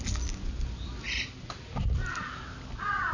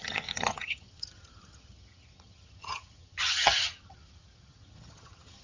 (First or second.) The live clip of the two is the first